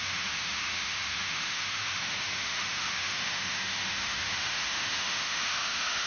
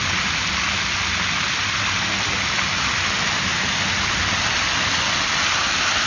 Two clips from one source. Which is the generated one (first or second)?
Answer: first